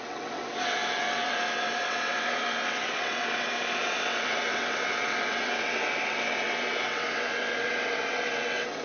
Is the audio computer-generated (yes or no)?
yes